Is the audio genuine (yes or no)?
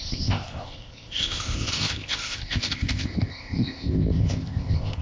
no